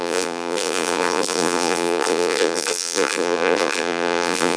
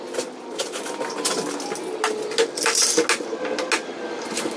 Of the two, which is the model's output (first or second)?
first